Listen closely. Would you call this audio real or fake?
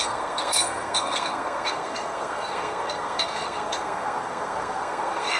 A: fake